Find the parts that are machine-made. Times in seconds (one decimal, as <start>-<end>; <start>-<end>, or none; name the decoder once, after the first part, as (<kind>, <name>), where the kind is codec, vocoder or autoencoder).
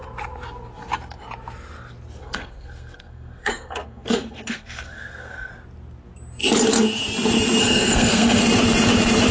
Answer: 2.2-5.5 (codec, SNAC); 7.6-8.4